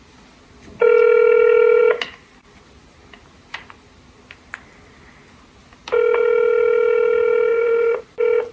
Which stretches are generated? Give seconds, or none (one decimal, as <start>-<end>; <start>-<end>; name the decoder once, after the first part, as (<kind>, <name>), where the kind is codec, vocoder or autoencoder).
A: 7.5-8.0 (vocoder, Vocos)